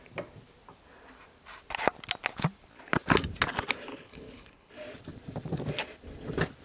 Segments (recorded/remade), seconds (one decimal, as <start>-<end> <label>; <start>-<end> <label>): 0.0-3.9 recorded; 3.9-4.7 remade; 4.7-6.6 recorded